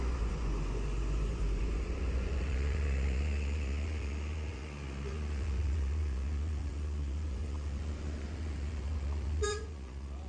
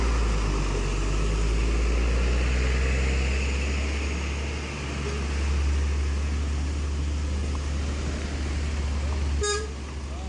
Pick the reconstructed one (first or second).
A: first